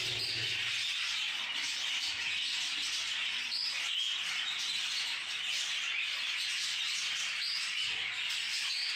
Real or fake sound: real